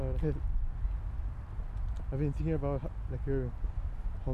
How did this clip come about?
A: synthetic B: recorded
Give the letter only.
B